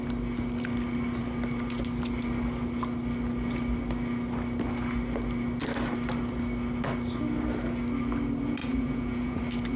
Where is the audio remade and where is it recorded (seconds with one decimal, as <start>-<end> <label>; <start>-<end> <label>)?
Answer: 0.0-8.6 recorded; 8.6-9.4 remade; 9.4-9.8 recorded